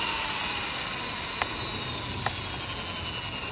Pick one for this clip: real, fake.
real